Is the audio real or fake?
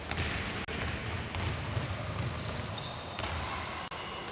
real